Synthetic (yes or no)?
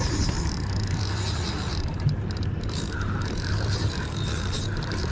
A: yes